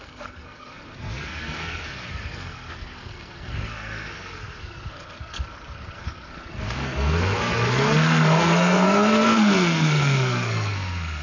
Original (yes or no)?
no